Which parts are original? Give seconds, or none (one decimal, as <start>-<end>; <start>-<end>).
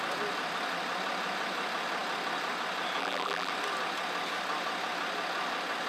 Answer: 0.0-3.0; 3.5-5.9